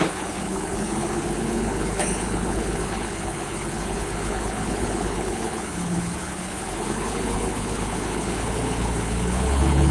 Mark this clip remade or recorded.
remade